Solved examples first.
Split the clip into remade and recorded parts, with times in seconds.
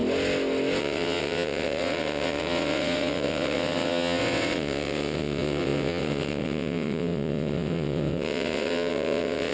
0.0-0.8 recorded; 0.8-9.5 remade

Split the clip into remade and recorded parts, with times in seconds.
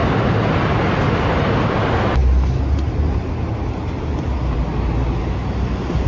0.0-6.1 recorded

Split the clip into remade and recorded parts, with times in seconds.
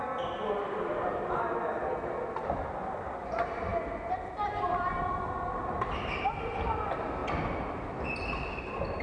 0.0-9.0 recorded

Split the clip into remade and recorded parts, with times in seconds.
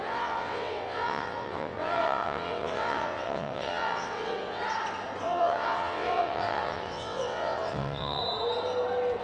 0.0-4.6 remade; 4.6-5.2 recorded; 5.2-8.2 remade; 8.2-9.2 recorded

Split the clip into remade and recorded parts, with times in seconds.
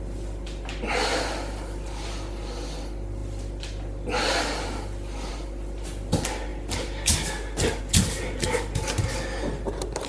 0.0-10.1 recorded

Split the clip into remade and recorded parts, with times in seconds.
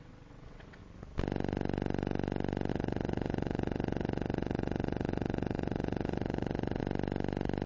0.0-0.8 remade; 0.8-2.7 recorded; 2.7-6.8 remade; 6.8-7.7 recorded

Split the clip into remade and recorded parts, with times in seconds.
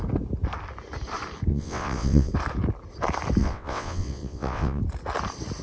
0.0-1.5 recorded; 1.5-2.3 remade; 2.3-3.4 recorded; 3.4-4.8 remade; 4.8-5.6 recorded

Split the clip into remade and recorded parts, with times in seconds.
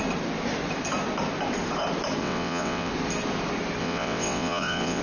0.0-2.2 recorded; 2.2-2.9 remade; 2.9-3.8 recorded; 3.8-5.0 remade